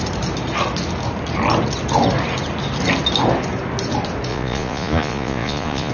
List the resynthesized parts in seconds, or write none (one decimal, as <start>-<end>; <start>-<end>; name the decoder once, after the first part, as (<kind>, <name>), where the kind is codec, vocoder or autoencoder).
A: 4.3-5.9 (vocoder, Vocos)